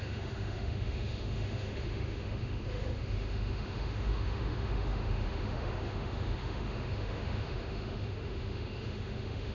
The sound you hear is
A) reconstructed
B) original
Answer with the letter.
A